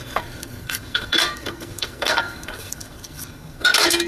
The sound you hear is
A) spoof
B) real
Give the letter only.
A